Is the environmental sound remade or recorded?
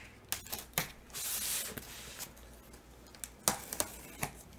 recorded